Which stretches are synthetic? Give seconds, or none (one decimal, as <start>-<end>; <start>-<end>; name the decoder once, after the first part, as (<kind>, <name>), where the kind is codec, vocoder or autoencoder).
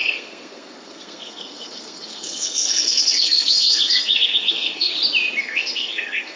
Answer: 0.0-4.9 (codec, SNAC); 5.4-6.4